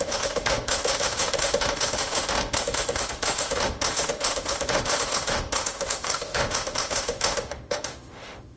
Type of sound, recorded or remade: remade